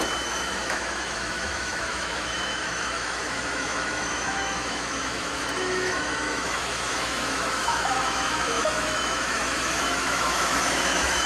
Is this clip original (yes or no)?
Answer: no